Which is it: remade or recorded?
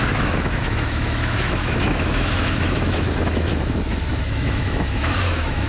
remade